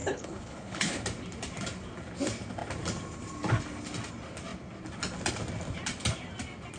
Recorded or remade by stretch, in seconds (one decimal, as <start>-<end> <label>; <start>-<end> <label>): 0.0-1.0 remade; 1.0-6.8 recorded